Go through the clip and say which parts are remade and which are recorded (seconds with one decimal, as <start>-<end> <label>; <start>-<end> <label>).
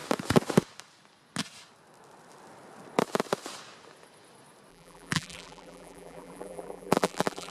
0.0-4.7 recorded; 4.7-7.5 remade